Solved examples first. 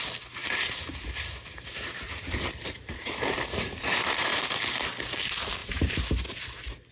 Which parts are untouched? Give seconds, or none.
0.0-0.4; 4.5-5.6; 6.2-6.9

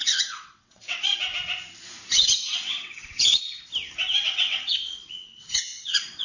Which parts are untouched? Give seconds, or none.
1.1-2.1; 3.4-4.2

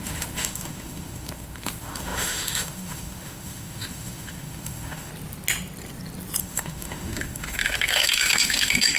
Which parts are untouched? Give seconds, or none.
5.1-6.4

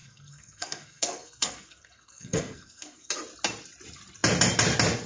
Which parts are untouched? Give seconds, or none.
3.1-5.1

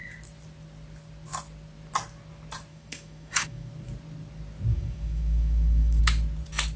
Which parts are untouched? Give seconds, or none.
0.0-2.7; 3.7-4.7; 6.0-6.8

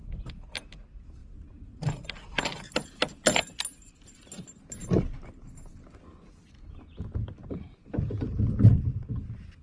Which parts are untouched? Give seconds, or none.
0.0-1.2; 1.9-7.4; 8.3-9.6

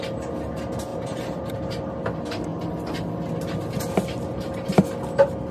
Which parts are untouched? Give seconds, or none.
0.0-0.9; 1.5-5.5